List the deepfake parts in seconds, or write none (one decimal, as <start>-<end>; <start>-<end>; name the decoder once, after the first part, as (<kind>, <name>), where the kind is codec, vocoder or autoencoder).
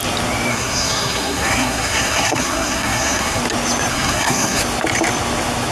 0.5-3.4 (codec, SNAC); 3.9-4.6